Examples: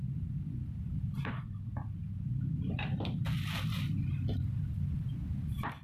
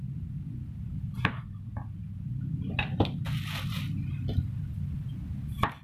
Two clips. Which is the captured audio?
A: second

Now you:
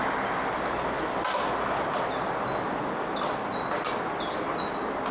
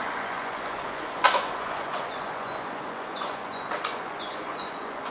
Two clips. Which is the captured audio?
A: first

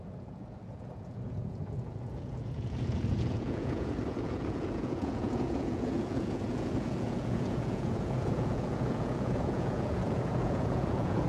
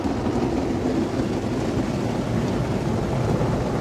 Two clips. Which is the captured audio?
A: second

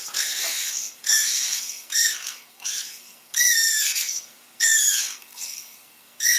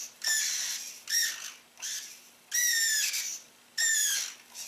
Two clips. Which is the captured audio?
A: second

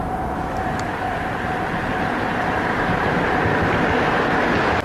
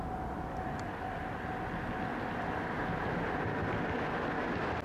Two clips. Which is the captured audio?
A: second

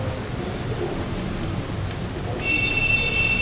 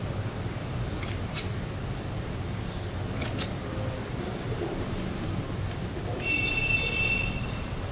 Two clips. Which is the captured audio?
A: first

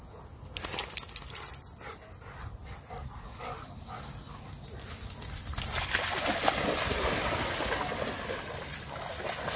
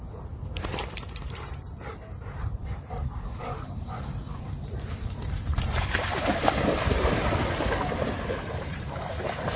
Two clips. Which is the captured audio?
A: first